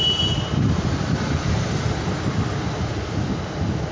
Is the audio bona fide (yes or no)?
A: yes